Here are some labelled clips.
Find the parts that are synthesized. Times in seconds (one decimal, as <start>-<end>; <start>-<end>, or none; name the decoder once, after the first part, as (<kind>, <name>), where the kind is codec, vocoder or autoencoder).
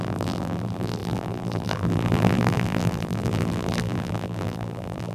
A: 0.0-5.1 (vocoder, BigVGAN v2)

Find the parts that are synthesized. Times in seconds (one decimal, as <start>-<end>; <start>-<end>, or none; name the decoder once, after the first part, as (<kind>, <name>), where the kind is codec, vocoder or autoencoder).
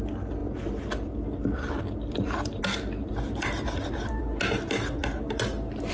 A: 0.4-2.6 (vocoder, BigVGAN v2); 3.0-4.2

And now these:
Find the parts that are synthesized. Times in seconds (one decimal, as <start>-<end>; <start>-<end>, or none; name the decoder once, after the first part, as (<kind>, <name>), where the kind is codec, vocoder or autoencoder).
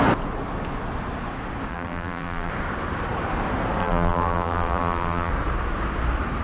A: 1.7-2.5 (vocoder, BigVGAN v2); 3.8-5.3